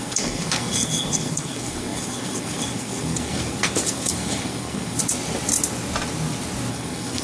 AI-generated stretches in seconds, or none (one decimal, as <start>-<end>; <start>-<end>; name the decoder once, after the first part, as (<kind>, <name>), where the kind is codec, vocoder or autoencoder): 0.0-5.0 (codec, SNAC); 6.7-7.2